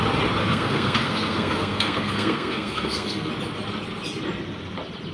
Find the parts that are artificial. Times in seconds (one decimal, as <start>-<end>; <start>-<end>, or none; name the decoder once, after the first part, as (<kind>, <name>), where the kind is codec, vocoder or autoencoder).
0.4-3.3 (codec, SNAC)